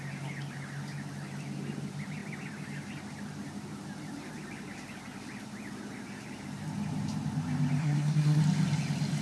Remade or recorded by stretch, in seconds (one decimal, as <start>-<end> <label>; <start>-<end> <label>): 0.0-7.8 recorded; 7.8-8.4 remade; 8.4-9.2 recorded